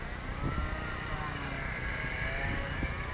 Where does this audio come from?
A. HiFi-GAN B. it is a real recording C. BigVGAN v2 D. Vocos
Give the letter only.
B